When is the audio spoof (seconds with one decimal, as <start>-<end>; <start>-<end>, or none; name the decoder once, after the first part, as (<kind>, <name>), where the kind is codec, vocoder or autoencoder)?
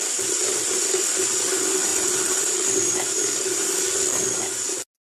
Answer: none